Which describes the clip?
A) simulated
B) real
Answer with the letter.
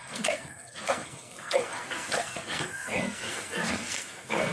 A